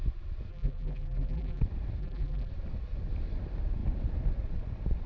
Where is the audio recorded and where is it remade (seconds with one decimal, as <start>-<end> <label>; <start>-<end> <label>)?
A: 0.0-0.5 recorded; 0.5-1.6 remade; 1.6-2.0 recorded; 2.0-2.5 remade; 2.5-5.1 recorded